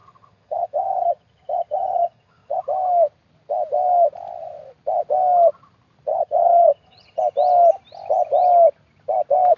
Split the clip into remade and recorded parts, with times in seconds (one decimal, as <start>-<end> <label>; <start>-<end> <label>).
0.0-2.6 remade; 2.6-6.1 recorded; 6.1-7.2 remade; 7.2-9.6 recorded